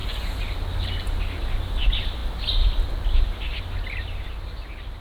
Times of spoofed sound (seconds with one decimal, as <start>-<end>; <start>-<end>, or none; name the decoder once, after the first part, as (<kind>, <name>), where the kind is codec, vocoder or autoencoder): none